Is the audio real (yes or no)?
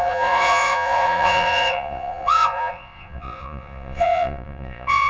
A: no